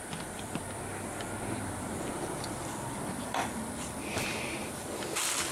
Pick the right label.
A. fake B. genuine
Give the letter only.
B